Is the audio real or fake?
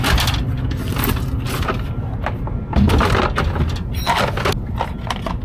real